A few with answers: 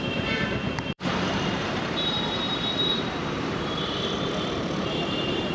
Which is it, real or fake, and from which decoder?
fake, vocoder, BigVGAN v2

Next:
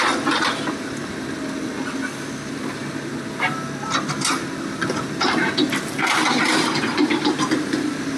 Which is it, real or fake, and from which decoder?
real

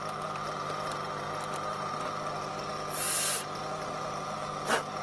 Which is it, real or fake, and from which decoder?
real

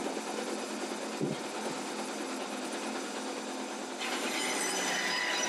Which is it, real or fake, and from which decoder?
fake, vocoder, BigVGAN v2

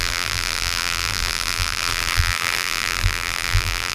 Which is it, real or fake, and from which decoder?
fake, vocoder, BigVGAN v2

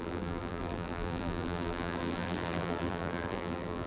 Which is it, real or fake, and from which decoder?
fake, vocoder, BigVGAN v2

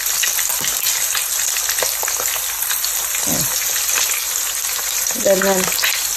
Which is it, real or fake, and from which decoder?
real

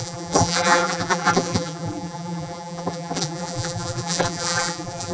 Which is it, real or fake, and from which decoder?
fake, vocoder, BigVGAN v2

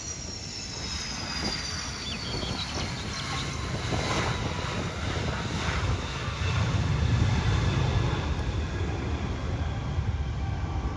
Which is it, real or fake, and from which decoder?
real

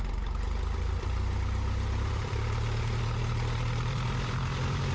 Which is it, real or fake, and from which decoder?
fake, vocoder, BigVGAN v2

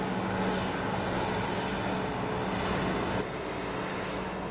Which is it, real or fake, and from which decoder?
real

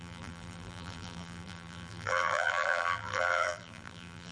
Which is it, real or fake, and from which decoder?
fake, vocoder, BigVGAN v2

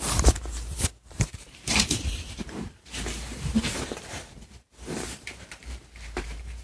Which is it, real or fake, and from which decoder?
fake, vocoder, BigVGAN v2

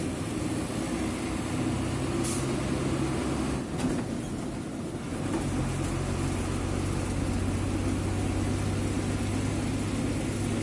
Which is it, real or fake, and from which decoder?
real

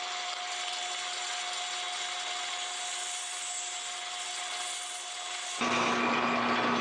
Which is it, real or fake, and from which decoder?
real